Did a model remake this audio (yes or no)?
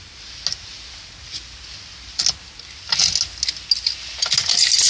no